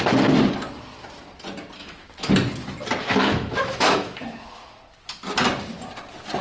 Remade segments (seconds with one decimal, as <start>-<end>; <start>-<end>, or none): 1.8-2.3; 3.0-4.8